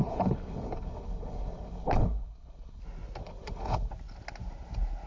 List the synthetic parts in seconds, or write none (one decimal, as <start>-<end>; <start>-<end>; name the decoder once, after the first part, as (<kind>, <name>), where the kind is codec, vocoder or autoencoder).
0.0-2.8 (codec, HILCodec); 3.2-3.9